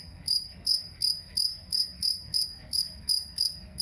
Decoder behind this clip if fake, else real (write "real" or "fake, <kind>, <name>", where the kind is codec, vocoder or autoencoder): fake, codec, SNAC